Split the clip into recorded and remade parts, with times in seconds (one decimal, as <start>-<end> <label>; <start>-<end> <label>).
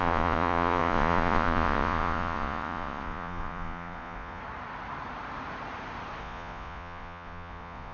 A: 0.0-4.4 remade; 4.4-6.2 recorded; 6.2-7.9 remade